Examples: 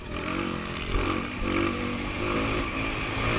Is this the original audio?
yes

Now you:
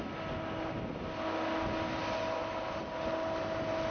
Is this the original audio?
yes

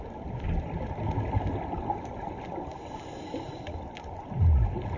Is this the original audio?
yes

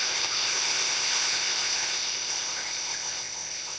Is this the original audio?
no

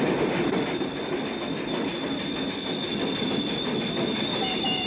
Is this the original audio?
yes